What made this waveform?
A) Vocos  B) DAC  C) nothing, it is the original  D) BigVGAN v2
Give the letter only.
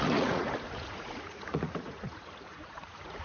A